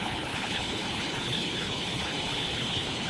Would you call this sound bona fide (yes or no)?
no